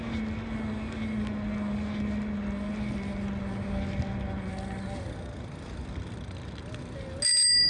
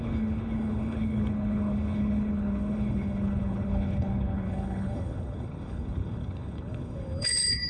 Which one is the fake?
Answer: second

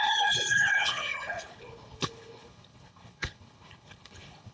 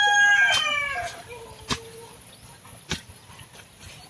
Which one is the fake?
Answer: first